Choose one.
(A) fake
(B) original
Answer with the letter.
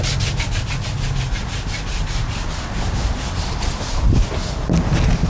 B